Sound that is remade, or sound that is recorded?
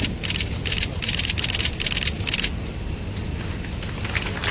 recorded